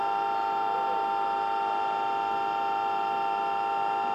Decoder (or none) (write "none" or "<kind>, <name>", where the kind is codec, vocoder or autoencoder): none